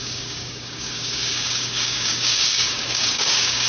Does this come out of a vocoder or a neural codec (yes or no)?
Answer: yes